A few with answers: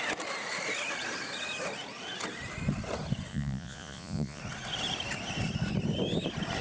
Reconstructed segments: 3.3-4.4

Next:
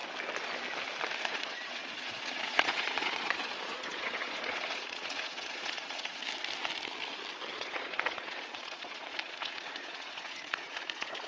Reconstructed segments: 1.3-6.2; 7.5-11.3